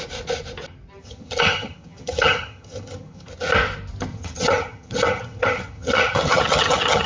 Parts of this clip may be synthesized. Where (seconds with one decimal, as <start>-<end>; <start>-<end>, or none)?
1.0-3.3; 4.1-7.1